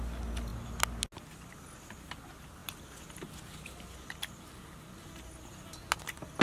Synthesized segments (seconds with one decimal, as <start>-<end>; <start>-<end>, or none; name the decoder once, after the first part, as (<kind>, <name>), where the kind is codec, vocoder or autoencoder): none